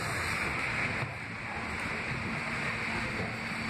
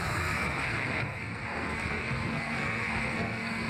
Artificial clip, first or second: second